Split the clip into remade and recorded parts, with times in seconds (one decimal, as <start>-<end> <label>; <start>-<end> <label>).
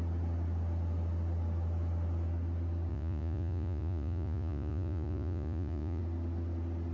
0.0-2.9 recorded; 2.9-6.0 remade; 6.0-6.9 recorded